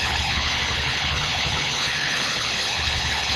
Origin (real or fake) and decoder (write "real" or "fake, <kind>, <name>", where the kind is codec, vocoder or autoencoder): fake, codec, HILCodec